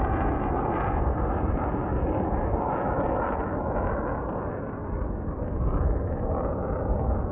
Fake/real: real